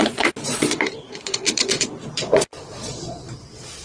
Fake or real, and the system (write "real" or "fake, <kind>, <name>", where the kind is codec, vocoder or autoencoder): fake, vocoder, Vocos